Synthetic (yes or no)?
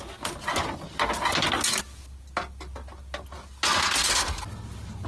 no